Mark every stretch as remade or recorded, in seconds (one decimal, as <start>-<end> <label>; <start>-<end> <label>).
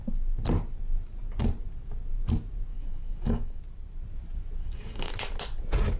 0.0-2.7 recorded; 2.7-3.6 remade; 3.6-4.6 recorded; 4.6-5.1 remade; 5.1-6.0 recorded